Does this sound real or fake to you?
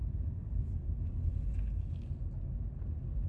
real